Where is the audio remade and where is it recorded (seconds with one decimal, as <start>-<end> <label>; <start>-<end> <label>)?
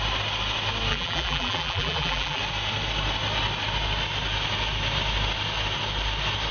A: 0.0-0.9 recorded; 0.9-2.4 remade; 2.4-6.5 recorded